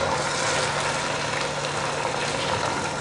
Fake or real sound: real